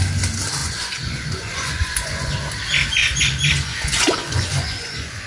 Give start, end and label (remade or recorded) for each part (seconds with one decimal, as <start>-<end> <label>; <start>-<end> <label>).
0.0-0.6 recorded; 0.6-2.3 remade; 2.3-3.0 recorded; 3.0-5.3 remade